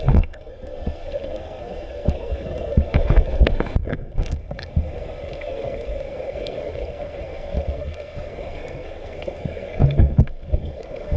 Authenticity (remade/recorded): remade